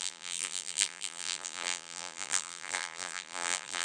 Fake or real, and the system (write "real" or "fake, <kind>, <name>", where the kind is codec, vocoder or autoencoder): fake, vocoder, BigVGAN v2